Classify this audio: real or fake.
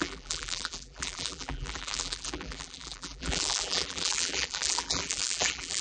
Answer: fake